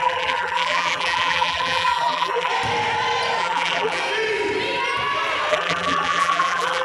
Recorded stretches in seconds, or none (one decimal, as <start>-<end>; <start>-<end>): 2.5-3.4; 4.0-5.5